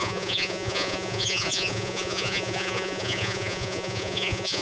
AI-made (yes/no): yes